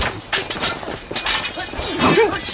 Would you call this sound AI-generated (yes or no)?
no